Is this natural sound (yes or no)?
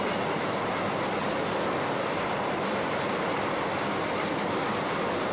yes